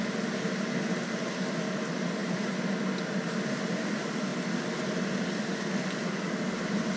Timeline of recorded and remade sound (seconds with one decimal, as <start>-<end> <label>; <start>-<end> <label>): 0.0-7.0 recorded